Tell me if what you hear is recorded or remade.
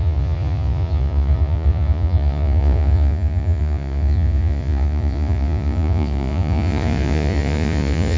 remade